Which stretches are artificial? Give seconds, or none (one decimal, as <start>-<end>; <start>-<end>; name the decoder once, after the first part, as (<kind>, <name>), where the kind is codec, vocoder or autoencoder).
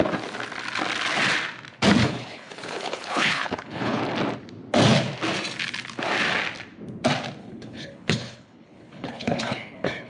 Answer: 2.0-4.0 (codec, HILCodec); 7.4-10.1